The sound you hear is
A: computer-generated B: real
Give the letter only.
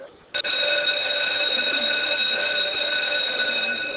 B